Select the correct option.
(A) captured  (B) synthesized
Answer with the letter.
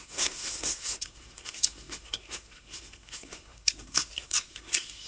B